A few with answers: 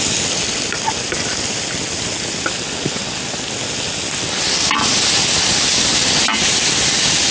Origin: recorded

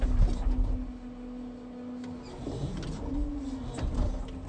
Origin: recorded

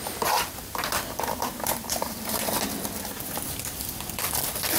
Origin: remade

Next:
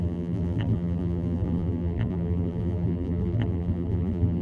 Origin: remade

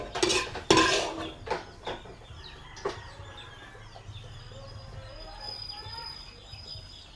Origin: recorded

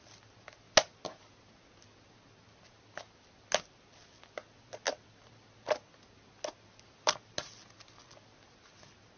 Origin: recorded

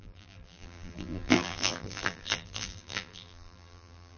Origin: remade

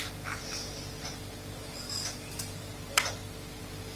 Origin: remade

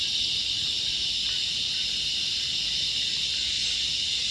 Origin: recorded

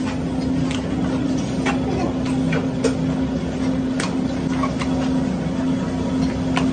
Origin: recorded